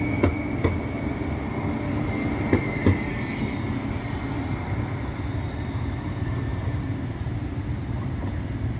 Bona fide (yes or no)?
yes